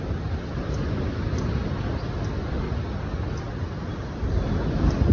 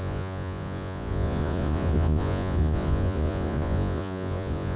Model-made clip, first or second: second